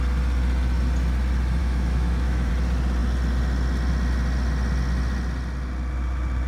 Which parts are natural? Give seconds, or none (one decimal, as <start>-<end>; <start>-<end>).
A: 0.0-1.6; 2.5-6.5